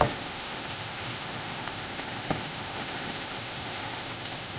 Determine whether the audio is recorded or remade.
remade